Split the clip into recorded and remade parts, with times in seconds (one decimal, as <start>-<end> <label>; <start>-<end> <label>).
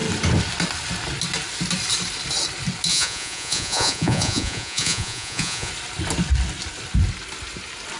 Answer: 0.0-2.9 recorded; 2.9-5.7 remade; 5.7-8.0 recorded